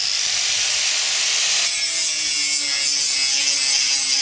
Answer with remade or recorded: recorded